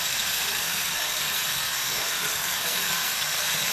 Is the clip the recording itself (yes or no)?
no